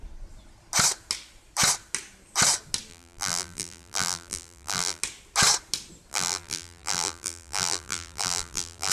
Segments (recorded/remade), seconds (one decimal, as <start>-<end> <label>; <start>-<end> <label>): 0.0-2.9 recorded; 2.9-5.0 remade; 5.0-6.1 recorded; 6.1-8.9 remade